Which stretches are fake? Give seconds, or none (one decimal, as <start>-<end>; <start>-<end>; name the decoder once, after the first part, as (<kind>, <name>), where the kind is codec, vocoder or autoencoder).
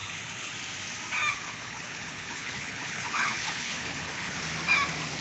0.0-0.5 (codec, HILCodec); 1.3-4.4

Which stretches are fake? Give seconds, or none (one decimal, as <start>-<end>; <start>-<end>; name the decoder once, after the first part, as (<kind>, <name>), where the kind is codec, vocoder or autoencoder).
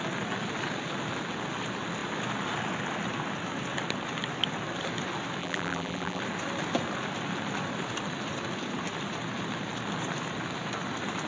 5.4-6.2 (vocoder, BigVGAN v2)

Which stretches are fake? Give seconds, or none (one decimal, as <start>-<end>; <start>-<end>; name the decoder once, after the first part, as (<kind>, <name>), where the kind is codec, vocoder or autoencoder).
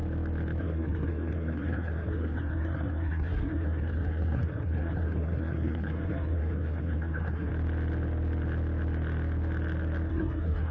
0.6-7.5 (codec, SNAC); 10.1-10.7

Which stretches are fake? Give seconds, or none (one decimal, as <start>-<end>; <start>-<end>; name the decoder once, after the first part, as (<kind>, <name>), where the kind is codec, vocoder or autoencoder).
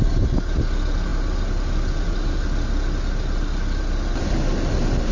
none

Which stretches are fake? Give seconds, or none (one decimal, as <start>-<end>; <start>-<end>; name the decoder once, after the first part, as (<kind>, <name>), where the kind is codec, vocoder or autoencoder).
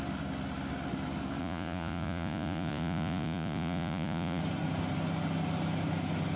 1.4-4.4 (vocoder, Vocos)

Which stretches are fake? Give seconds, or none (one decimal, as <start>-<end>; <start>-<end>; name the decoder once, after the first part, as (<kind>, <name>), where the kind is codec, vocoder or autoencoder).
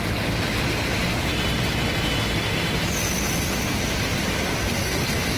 none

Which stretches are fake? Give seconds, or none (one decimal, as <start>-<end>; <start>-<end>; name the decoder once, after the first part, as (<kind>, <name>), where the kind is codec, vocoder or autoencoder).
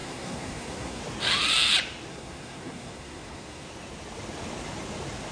0.0-1.0 (codec, SNAC); 2.1-3.7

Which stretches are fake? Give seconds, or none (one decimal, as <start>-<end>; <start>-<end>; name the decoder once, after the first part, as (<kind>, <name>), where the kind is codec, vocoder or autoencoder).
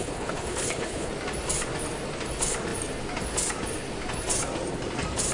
0.0-1.1 (codec, HILCodec)